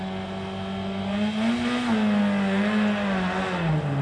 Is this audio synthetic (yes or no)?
no